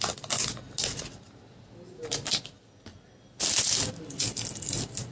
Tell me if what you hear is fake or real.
real